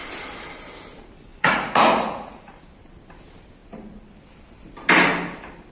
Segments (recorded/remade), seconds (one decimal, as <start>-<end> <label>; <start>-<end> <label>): 0.0-1.3 recorded; 1.3-2.6 remade; 2.6-5.7 recorded